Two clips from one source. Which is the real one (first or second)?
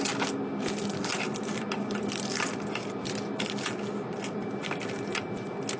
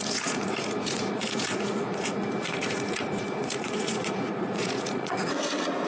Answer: first